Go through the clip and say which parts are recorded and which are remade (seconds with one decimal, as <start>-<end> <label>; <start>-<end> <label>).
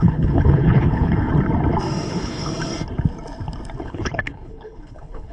0.0-1.3 remade; 1.3-2.1 recorded; 2.1-2.5 remade; 2.5-3.8 recorded; 3.8-5.3 remade